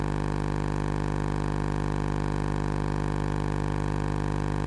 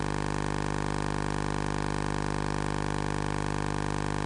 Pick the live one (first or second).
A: second